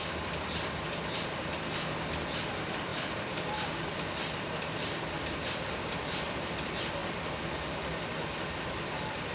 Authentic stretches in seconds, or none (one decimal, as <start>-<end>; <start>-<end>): 7.0-8.0

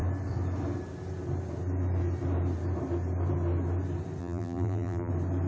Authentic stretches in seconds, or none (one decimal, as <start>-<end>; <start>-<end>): 0.0-4.2; 5.1-5.5

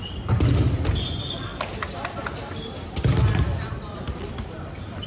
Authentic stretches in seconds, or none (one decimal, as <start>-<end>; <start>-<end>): 1.5-4.6

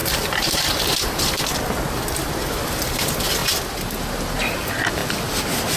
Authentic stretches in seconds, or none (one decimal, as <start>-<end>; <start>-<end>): 1.2-5.8

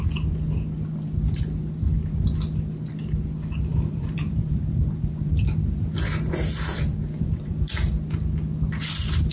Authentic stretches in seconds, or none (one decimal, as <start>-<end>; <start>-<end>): 0.0-3.7; 7.9-9.3

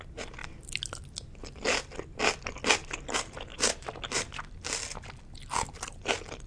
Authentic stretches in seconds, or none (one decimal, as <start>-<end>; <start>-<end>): 0.0-3.5; 4.7-6.5

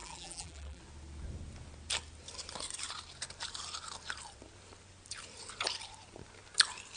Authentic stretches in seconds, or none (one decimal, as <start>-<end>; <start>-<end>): 0.8-7.0

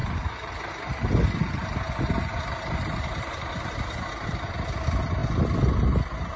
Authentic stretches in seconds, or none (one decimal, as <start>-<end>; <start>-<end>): 0.5-1.4; 4.1-6.4